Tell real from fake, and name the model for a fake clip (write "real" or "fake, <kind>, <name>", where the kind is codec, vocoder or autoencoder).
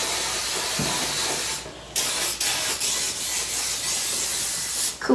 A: real